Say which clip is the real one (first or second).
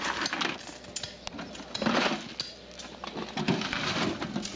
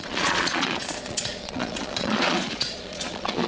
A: first